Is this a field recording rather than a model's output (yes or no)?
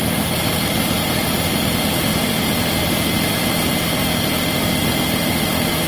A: no